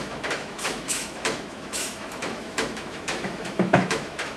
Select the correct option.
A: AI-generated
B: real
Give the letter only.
A